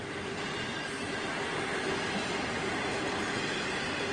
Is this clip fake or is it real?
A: real